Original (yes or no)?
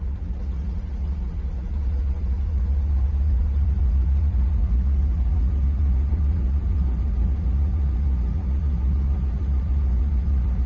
no